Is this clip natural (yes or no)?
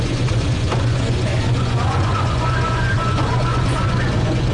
no